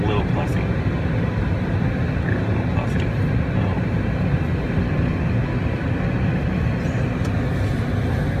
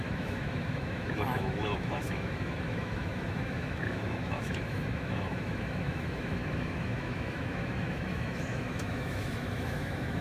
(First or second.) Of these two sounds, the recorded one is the first